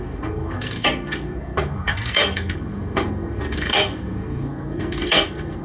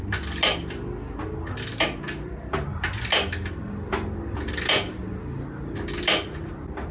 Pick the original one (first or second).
second